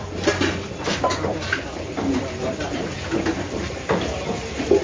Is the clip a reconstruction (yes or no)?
yes